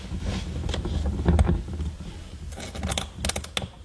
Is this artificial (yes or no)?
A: no